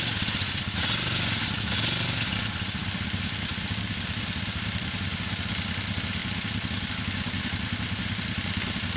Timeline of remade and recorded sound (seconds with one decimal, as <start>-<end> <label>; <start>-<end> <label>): 0.0-9.0 recorded